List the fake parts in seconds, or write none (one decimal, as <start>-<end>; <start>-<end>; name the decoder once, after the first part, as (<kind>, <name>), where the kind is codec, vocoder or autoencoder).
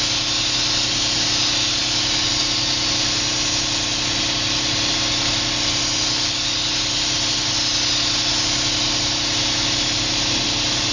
none